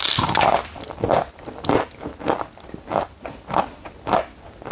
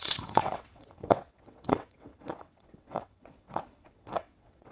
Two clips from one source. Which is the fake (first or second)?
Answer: second